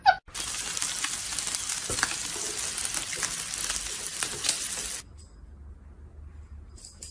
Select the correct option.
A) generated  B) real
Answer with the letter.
B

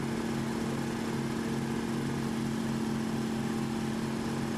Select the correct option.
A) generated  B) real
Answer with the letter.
B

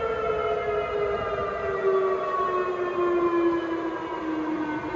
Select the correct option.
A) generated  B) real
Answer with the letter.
B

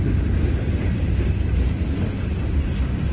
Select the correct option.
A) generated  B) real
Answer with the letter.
B